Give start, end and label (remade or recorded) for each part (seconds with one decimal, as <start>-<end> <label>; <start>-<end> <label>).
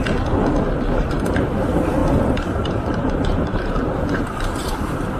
0.0-1.0 recorded; 1.0-5.2 remade